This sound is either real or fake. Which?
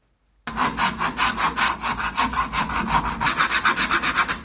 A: real